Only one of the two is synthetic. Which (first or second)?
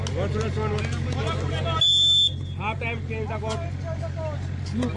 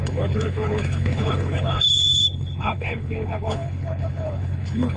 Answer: second